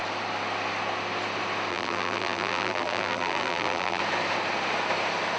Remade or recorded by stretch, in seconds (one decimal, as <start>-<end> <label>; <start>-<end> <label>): 0.0-1.7 recorded; 1.7-4.0 remade; 4.0-5.4 recorded